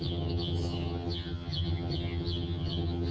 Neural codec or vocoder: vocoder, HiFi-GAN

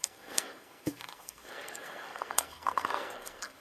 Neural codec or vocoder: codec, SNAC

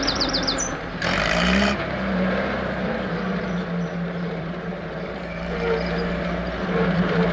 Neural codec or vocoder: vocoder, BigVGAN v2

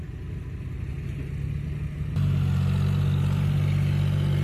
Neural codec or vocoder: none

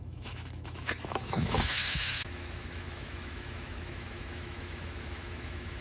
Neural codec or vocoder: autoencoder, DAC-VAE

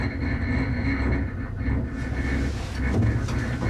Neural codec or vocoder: none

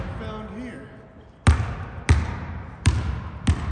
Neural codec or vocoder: none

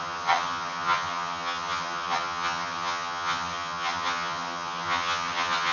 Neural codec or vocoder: vocoder, HiFi-GAN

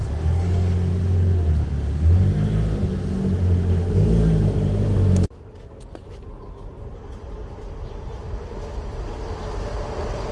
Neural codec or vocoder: none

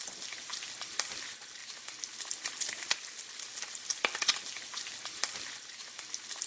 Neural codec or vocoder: none